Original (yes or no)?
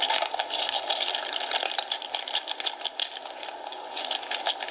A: yes